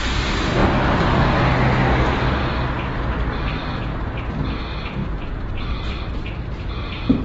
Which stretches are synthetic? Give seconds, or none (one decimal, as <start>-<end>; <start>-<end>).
5.0-6.6